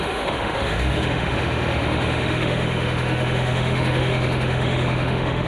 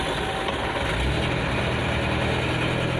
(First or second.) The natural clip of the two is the second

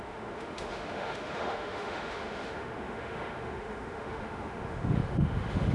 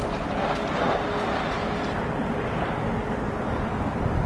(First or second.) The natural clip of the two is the second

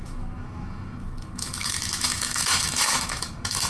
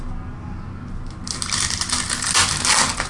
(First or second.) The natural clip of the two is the second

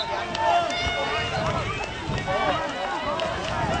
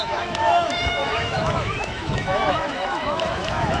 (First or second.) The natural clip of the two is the first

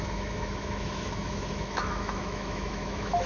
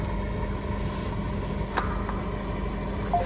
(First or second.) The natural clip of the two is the second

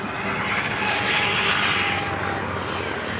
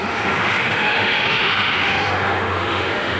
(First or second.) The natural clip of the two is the first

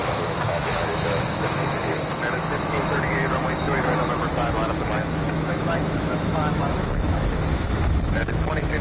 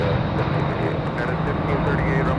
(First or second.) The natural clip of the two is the second